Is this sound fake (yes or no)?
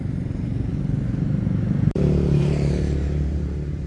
yes